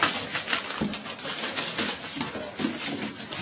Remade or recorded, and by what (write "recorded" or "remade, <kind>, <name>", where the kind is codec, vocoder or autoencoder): recorded